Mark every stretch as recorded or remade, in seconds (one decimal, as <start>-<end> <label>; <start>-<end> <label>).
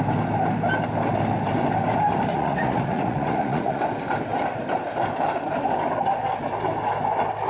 0.0-2.3 recorded; 2.3-3.8 remade; 3.8-7.5 recorded